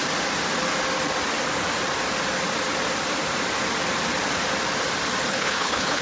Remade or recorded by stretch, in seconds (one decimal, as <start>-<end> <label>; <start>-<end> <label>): 0.0-5.3 recorded; 5.3-6.0 remade